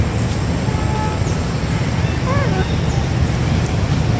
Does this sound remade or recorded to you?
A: recorded